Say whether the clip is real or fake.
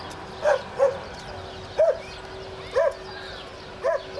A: real